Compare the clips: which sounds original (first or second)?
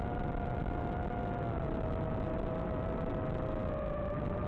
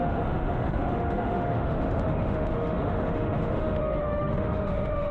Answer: first